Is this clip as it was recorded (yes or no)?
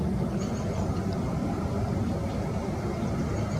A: yes